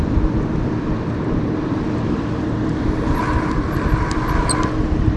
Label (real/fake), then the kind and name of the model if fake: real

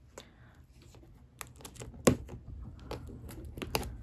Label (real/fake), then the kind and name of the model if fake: real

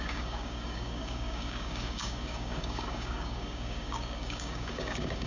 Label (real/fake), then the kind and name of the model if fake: fake, codec, DAC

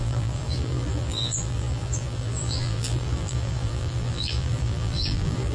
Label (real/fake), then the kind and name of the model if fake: fake, vocoder, BigVGAN v2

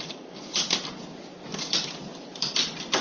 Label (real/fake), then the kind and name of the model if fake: real